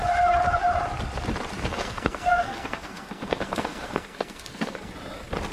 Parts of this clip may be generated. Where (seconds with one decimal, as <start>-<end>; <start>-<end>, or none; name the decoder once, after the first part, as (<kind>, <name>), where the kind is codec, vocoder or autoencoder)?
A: 1.6-4.9 (codec, SNAC)